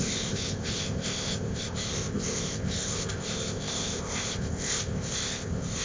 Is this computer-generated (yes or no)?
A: yes